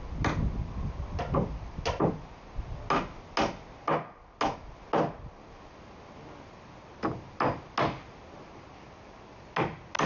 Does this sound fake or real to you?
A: real